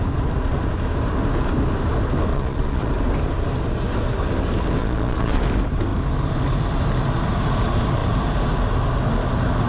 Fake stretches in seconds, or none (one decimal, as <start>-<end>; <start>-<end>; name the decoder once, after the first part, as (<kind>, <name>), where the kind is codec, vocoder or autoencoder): 2.3-2.9 (vocoder, Vocos); 4.8-5.4

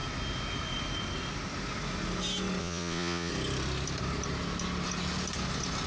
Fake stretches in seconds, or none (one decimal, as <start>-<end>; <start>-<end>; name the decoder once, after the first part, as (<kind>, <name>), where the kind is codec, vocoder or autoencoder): 2.6-3.3 (vocoder, Vocos)

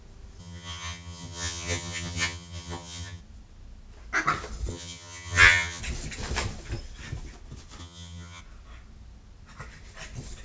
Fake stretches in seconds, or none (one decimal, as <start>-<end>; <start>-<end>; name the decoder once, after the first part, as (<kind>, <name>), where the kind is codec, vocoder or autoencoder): 0.4-3.2 (vocoder, HiFi-GAN); 4.7-5.8; 7.8-8.4

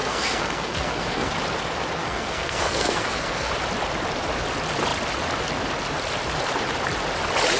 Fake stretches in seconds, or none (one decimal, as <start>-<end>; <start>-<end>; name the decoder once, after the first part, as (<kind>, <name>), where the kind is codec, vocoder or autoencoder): 0.0-1.3 (codec, SNAC); 2.0-3.5